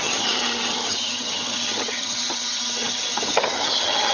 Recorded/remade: remade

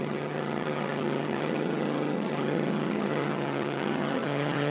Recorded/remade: remade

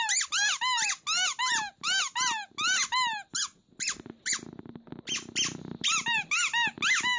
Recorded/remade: recorded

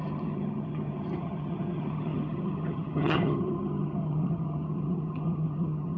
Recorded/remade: remade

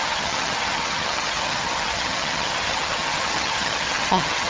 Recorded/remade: remade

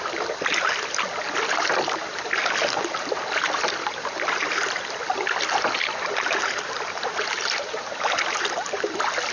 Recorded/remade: recorded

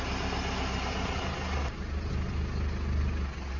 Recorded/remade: recorded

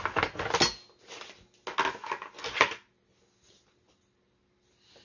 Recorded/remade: recorded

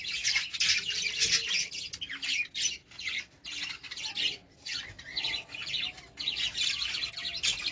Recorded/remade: recorded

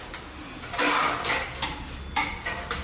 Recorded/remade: recorded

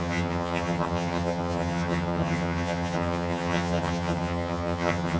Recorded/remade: remade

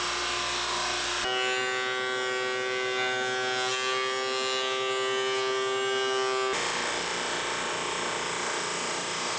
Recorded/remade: recorded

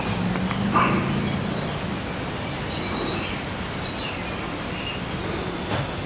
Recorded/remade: recorded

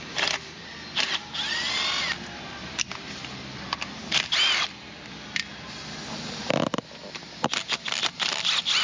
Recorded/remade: recorded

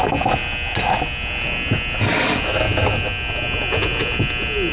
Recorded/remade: recorded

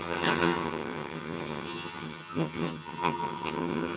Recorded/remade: remade